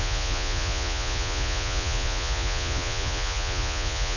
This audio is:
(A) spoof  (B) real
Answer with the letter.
A